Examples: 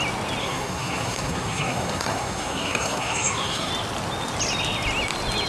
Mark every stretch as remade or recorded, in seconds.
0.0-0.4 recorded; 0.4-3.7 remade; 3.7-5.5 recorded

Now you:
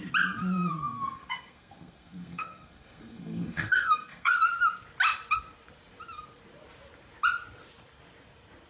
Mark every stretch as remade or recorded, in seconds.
0.0-0.8 recorded; 0.8-4.4 remade; 4.4-8.7 recorded

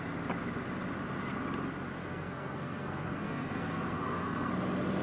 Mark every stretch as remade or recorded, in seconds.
0.0-2.0 recorded; 2.0-4.5 remade; 4.5-5.0 recorded